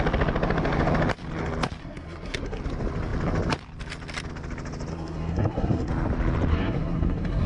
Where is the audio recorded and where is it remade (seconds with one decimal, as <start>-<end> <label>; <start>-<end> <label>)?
0.0-1.8 recorded; 1.8-2.6 remade; 2.6-4.9 recorded; 4.9-5.9 remade; 5.9-6.5 recorded; 6.5-7.5 remade